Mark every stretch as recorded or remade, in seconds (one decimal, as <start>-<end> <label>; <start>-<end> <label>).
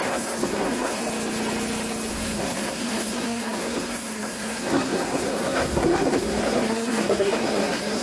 0.0-1.0 remade; 1.0-2.1 recorded; 2.1-8.0 remade